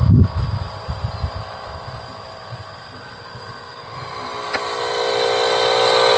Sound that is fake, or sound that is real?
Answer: real